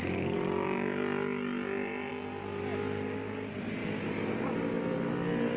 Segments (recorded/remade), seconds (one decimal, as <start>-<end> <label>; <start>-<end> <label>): 0.0-5.6 recorded